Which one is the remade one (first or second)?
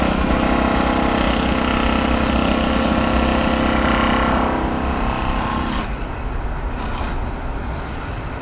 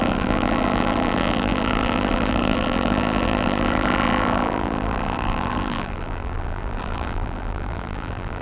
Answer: second